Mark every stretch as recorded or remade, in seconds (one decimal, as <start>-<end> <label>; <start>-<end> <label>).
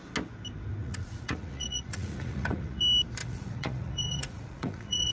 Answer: 0.0-0.8 recorded; 0.8-2.8 remade; 2.8-3.2 recorded; 3.2-5.1 remade